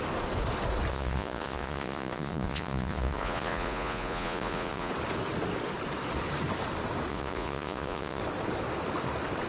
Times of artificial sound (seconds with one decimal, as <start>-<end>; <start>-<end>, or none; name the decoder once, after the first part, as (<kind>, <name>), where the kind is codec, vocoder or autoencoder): 0.9-4.9 (vocoder, Vocos); 7.1-8.2